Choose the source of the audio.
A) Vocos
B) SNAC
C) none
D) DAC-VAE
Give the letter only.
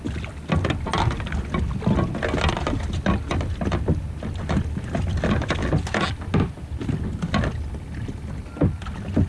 C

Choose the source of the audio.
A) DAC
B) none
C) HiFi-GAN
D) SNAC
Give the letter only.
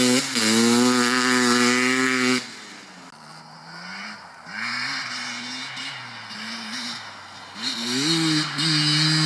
B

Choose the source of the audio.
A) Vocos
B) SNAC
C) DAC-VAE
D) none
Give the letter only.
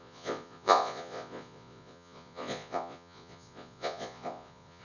A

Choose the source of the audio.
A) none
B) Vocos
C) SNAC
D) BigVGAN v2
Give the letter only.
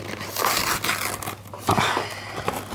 D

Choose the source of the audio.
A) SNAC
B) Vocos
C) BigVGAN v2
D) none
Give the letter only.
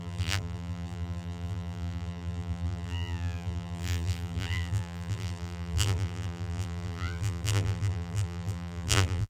C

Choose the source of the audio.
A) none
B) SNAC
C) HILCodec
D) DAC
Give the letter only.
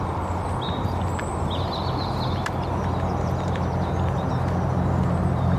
A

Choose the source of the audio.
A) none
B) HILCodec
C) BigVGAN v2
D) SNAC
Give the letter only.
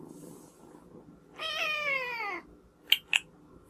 A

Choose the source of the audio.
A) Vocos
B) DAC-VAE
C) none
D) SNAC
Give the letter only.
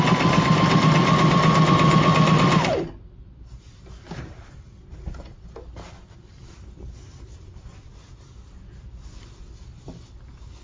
C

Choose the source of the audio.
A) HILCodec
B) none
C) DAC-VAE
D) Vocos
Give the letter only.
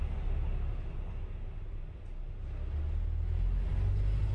B